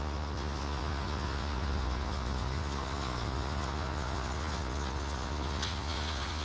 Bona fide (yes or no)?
no